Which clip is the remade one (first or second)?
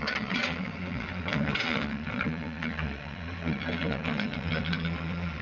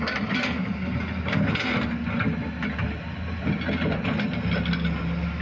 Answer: first